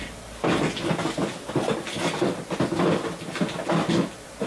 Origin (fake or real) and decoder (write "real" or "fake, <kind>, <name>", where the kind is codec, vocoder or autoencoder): real